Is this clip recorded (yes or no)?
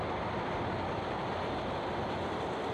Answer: no